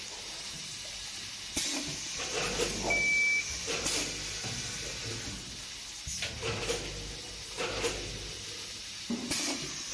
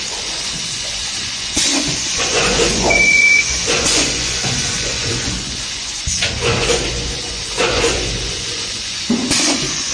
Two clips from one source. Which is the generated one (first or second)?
second